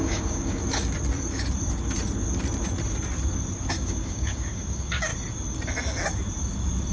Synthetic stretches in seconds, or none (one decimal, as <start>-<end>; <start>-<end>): 0.0-0.6; 3.7-5.1